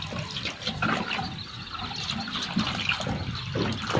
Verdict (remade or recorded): recorded